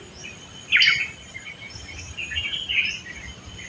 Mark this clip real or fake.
real